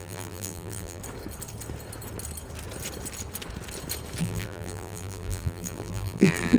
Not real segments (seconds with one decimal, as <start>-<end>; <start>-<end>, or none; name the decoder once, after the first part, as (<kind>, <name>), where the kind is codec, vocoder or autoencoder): 0.0-1.0 (vocoder, BigVGAN v2); 4.2-6.6